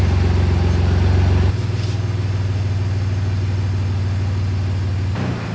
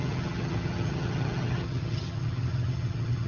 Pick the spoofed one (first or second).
second